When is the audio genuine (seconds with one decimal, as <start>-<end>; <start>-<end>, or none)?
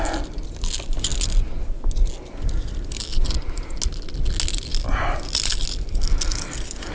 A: 0.0-6.9